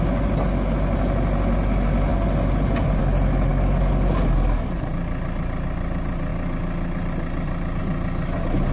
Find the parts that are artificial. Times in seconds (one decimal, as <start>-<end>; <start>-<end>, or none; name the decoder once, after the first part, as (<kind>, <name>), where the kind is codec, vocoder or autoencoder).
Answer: 3.5-4.9 (codec, DAC)